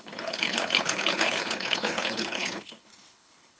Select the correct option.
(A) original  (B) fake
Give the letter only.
B